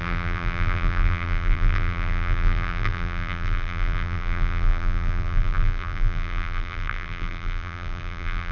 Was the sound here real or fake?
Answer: fake